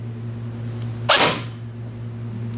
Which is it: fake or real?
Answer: real